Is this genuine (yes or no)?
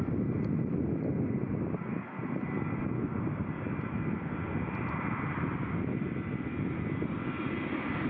yes